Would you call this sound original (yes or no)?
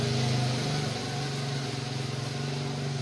yes